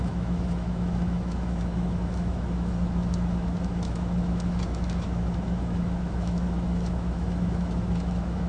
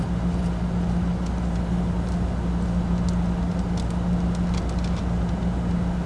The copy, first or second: first